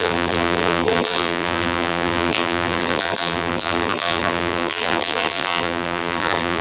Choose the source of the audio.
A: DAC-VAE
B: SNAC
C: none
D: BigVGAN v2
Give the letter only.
D